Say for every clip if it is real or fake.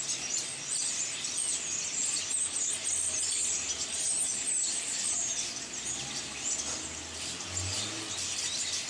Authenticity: real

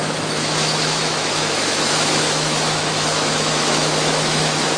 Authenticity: fake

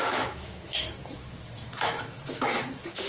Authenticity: fake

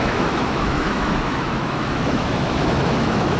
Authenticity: fake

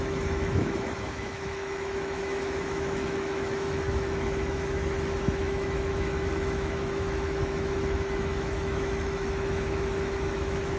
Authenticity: fake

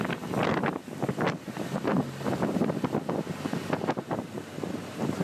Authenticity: real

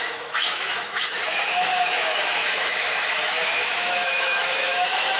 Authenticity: fake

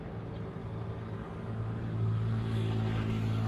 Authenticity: real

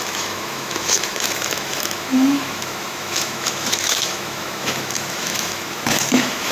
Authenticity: fake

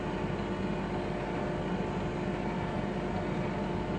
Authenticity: real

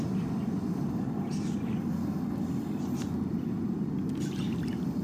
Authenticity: real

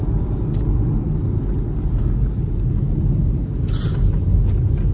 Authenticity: real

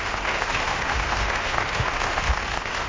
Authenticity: fake